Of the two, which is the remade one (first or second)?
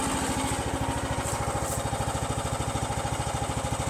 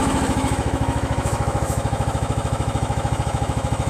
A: second